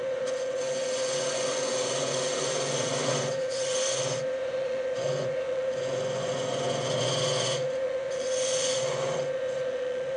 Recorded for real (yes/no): no